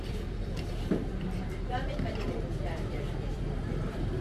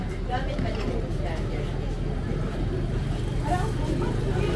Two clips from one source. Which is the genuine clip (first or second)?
second